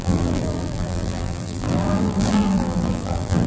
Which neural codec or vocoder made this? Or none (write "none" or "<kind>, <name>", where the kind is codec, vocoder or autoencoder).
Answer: vocoder, BigVGAN v2